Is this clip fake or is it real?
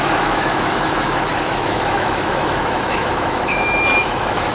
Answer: fake